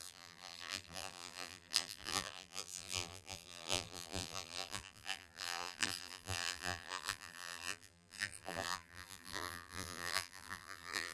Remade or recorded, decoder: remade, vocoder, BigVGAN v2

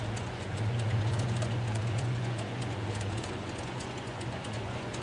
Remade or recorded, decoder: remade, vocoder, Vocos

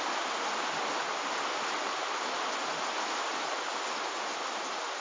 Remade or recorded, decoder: recorded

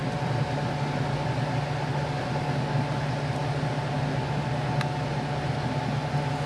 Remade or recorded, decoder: recorded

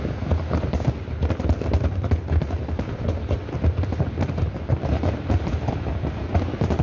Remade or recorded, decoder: remade, vocoder, BigVGAN v2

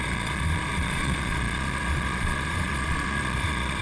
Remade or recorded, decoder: remade, vocoder, Vocos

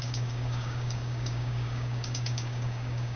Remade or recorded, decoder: remade, codec, DAC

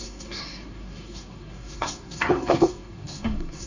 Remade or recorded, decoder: remade, codec, SNAC